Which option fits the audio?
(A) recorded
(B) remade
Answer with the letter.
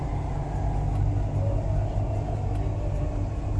A